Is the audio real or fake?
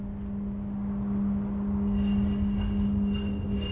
real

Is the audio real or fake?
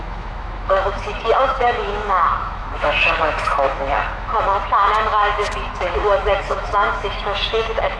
fake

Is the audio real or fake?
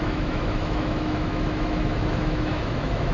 fake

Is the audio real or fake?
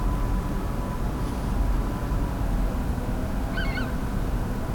real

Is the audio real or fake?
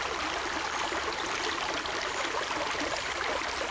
real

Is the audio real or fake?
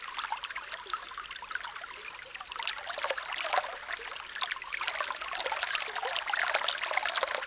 real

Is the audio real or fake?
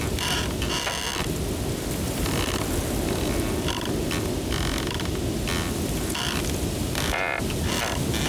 real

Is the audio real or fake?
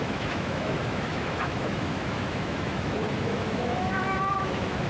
fake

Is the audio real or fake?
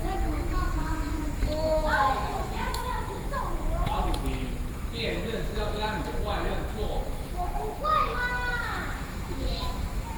fake